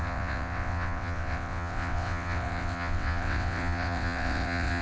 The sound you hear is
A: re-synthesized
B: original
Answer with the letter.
A